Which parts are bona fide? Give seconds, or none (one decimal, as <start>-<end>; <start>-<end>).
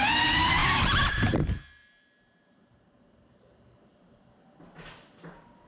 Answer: 0.0-0.6; 4.0-5.7